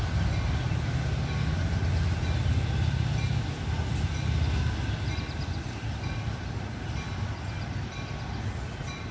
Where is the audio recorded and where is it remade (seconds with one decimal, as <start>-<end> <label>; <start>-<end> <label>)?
0.0-9.1 recorded